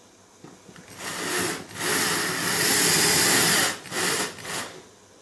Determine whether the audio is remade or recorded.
recorded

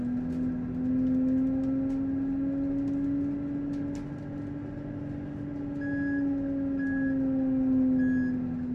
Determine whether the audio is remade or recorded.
recorded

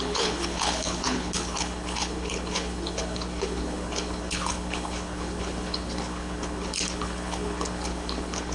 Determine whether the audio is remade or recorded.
remade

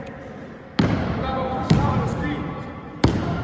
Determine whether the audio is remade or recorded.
remade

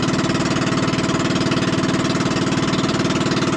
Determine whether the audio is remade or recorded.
recorded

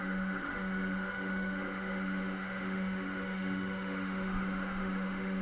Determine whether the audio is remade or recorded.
remade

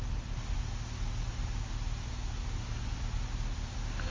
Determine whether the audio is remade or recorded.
recorded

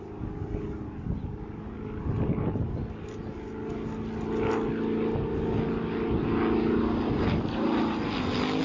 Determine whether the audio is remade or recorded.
recorded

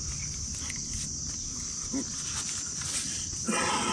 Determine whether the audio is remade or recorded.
recorded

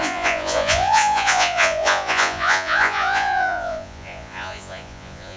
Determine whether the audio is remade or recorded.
remade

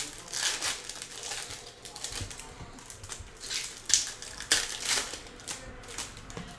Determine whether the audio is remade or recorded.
recorded